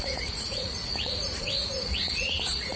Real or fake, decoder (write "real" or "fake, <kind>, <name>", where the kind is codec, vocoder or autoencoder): fake, vocoder, Vocos